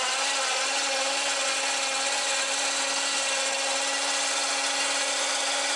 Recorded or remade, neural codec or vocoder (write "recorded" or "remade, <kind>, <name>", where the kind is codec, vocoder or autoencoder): recorded